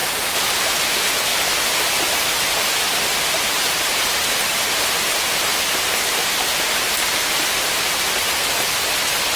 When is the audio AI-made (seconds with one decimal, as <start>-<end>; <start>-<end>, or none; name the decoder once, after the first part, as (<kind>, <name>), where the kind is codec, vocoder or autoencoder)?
0.0-1.3 (vocoder, BigVGAN v2); 1.8-9.4